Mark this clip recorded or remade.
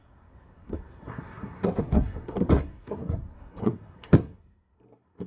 remade